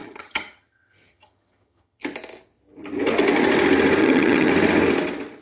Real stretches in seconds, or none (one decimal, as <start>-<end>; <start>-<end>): 2.0-4.0; 4.5-5.4